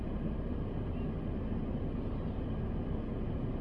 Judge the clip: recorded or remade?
recorded